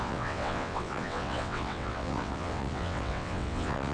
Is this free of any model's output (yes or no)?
no